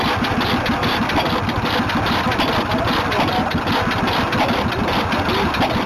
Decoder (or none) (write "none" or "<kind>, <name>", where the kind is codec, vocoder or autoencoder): none